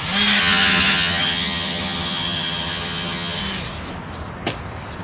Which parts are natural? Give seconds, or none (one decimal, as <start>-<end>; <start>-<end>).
0.0-0.4; 3.4-5.0